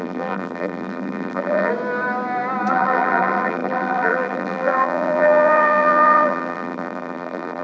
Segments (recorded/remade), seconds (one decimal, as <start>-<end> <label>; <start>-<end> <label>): 0.0-1.7 remade; 1.7-2.7 recorded; 2.7-7.6 remade